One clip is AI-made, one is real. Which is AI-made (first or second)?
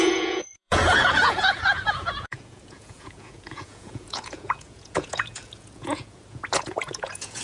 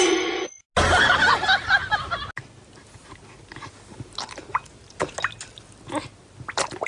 first